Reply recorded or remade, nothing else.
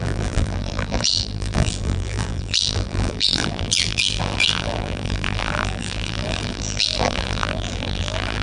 remade